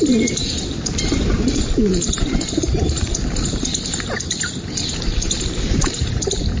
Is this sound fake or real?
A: fake